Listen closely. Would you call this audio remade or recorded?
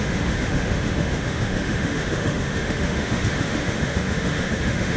remade